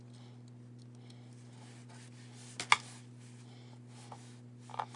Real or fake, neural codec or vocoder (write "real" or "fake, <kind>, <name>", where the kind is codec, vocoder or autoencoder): real